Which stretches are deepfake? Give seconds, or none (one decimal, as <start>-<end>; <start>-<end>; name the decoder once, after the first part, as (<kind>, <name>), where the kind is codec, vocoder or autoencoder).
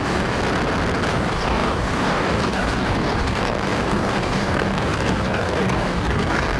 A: 0.0-0.4 (codec, DAC); 1.1-6.6